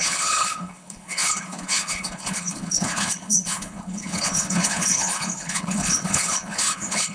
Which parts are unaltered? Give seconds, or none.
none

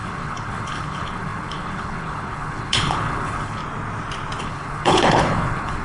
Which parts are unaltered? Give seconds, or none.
3.6-4.4

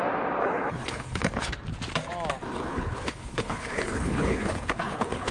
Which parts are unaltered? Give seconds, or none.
0.0-0.4; 1.5-2.7

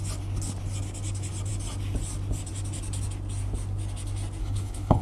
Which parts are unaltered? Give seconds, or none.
0.0-4.4